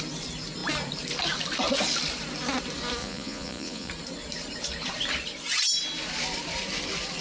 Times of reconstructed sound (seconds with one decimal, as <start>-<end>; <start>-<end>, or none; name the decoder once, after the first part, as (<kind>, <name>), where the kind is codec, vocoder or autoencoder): 3.0-3.9 (vocoder, Vocos)